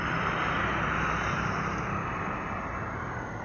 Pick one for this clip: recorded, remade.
recorded